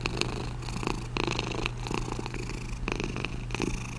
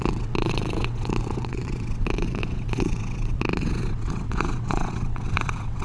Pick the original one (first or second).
first